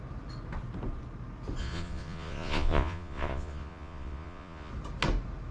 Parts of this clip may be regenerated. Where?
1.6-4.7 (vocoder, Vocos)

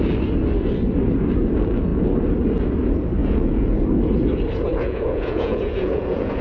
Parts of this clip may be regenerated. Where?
3.2-3.7 (vocoder, Vocos); 4.7-6.4

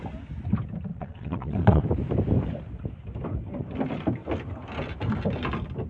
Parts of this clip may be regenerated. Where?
0.9-1.8 (vocoder, Vocos)